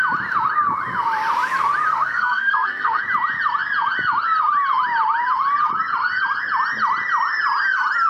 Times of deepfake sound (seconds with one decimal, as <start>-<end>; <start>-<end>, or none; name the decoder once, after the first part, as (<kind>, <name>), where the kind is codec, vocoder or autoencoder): 1.9-3.0 (codec, SNAC)